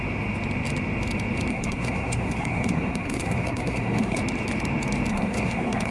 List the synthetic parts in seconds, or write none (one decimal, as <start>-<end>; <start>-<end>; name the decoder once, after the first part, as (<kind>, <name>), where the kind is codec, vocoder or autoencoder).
1.5-4.2 (codec, SNAC); 5.1-5.9